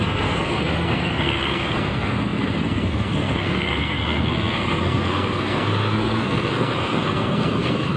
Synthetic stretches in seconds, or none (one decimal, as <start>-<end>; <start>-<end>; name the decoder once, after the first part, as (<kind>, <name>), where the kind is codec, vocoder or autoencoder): 0.0-8.0 (codec, SNAC)